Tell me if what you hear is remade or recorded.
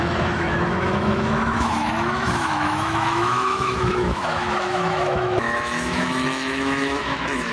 remade